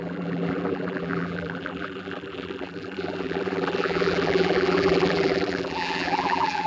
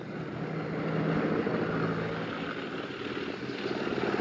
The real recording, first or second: second